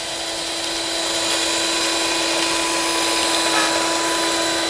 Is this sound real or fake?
real